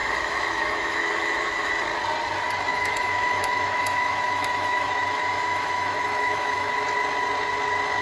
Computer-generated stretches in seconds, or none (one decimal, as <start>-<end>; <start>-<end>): 0.0-1.7; 2.7-6.7